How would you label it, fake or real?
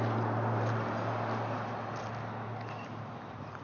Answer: real